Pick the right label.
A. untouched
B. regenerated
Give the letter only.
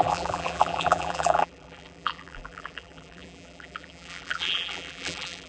B